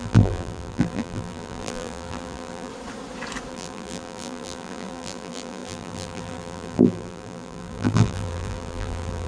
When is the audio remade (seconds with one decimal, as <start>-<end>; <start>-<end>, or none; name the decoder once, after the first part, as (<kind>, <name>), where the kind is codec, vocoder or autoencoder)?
0.0-2.7 (vocoder, BigVGAN v2); 3.5-9.3